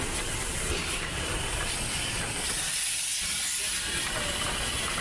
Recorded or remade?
recorded